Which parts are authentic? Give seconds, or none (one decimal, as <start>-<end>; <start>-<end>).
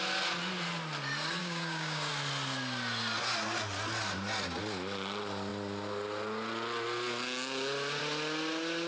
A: 0.0-1.4; 2.1-8.9